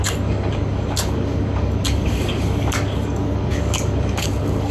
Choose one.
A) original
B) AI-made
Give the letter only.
B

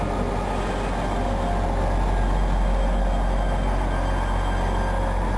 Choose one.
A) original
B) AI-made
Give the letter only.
A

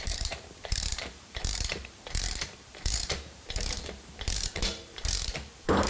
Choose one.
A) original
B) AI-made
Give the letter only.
B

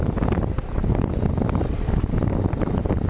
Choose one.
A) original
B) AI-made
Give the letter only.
A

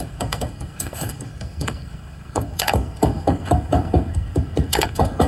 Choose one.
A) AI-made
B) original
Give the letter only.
A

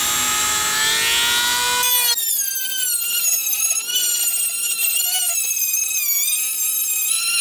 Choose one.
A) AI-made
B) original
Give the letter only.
B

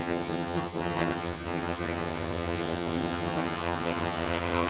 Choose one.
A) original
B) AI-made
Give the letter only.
B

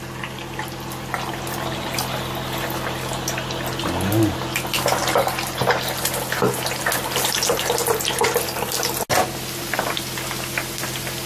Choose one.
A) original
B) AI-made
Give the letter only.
A